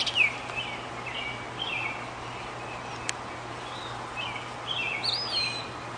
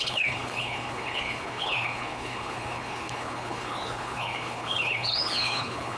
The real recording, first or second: first